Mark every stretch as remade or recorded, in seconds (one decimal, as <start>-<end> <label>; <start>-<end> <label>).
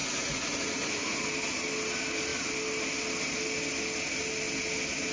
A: 0.0-1.2 remade; 1.2-5.1 recorded